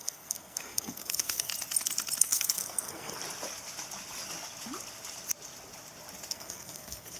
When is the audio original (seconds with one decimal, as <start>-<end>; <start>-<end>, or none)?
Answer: 1.5-2.2; 3.2-6.3